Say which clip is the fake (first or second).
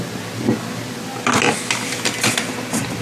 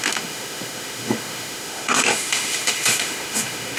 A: second